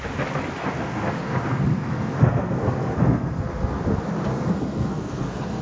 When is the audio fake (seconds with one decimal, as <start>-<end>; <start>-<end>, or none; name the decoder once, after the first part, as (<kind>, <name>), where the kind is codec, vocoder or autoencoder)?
0.6-3.8 (codec, SNAC); 4.3-5.6